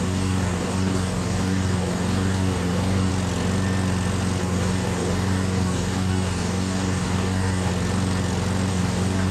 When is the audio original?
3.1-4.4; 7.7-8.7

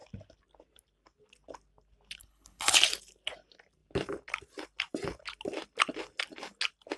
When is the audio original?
0.0-2.2; 2.8-7.0

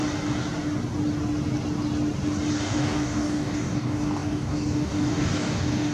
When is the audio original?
0.0-2.5